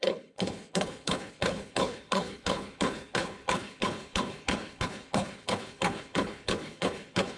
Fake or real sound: fake